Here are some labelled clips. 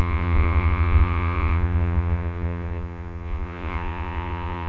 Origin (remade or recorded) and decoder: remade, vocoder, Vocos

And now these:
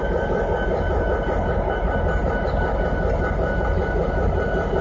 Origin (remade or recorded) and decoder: recorded